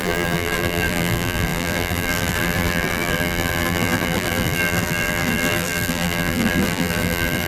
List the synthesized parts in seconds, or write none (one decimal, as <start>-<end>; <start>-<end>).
0.0-7.5